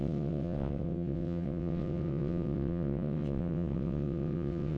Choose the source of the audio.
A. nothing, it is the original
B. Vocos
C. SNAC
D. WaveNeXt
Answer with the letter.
D